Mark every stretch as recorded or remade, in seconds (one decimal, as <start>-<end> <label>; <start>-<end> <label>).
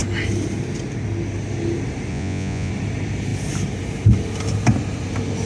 0.0-2.1 recorded; 2.1-2.7 remade; 2.7-5.5 recorded